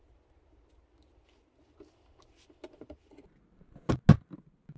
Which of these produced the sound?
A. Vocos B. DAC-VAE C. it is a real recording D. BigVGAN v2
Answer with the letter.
C